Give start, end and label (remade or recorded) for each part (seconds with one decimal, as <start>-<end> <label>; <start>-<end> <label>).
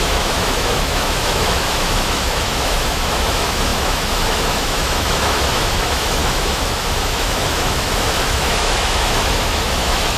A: 0.0-10.2 remade